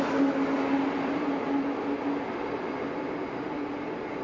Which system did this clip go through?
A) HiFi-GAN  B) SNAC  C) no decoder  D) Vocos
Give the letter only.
C